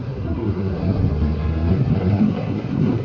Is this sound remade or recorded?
remade